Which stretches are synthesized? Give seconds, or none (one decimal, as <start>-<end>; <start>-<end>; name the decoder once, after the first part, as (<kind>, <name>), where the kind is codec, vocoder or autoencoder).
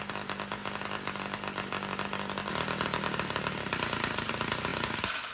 none